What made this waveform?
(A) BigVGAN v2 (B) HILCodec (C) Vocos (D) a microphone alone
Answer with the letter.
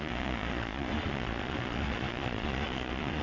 C